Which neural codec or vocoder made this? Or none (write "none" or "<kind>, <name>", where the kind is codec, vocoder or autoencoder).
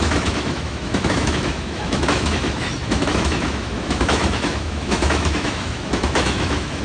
autoencoder, DAC-VAE